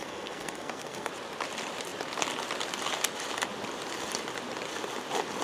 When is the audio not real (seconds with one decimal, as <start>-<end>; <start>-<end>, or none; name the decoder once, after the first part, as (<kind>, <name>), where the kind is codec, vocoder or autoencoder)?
0.0-1.1 (codec, SNAC)